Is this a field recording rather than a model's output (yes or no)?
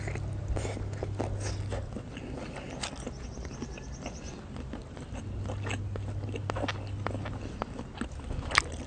yes